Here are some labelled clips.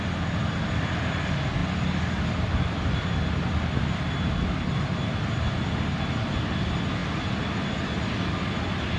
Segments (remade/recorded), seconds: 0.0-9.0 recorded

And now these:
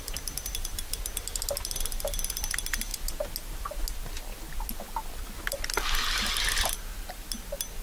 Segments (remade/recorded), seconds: 0.0-0.5 recorded; 0.5-1.0 remade; 1.0-7.8 recorded

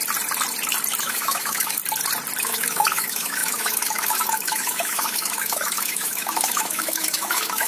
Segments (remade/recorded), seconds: 0.0-1.0 recorded; 1.0-1.8 remade; 1.8-2.4 recorded; 2.4-7.7 remade

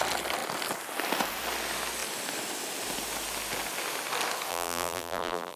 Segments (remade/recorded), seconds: 0.0-4.5 recorded; 4.5-5.6 remade

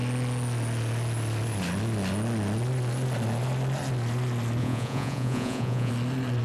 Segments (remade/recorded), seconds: 0.0-4.6 recorded; 4.6-5.9 remade; 5.9-6.4 recorded

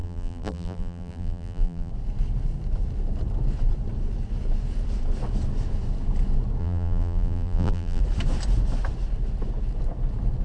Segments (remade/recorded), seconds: 0.0-1.9 remade; 1.9-6.6 recorded; 6.6-8.0 remade; 8.0-10.4 recorded